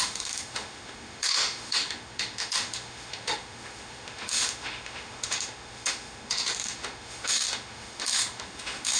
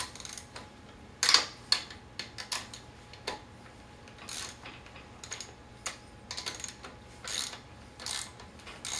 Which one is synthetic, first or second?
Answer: first